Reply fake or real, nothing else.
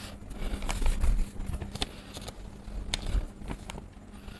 real